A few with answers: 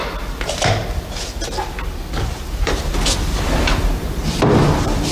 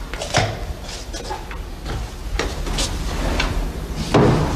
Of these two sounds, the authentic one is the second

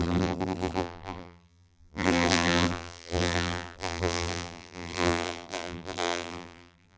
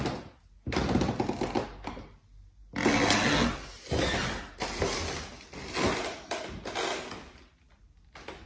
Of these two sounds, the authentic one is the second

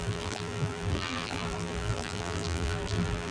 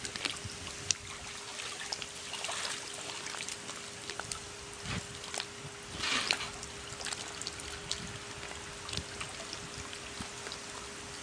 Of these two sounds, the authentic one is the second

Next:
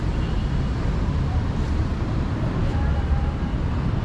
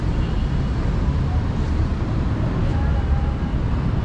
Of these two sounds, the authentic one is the second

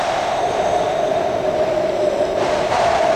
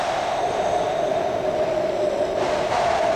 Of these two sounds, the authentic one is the second